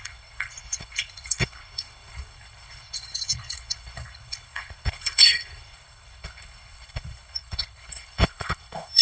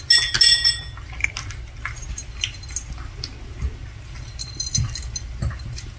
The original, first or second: second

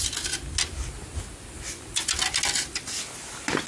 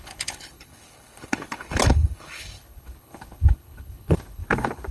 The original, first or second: first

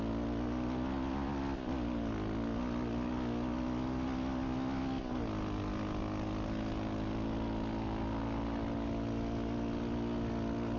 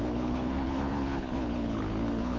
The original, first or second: first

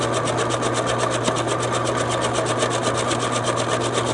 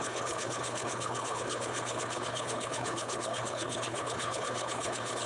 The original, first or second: first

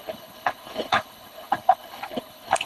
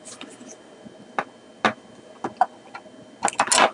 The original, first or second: second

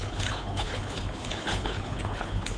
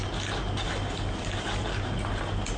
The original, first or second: second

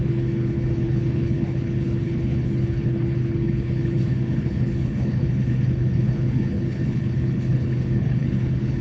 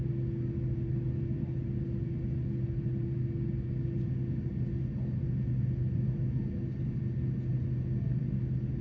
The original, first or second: second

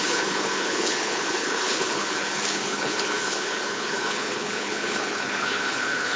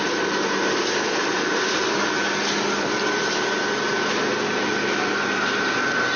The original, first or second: second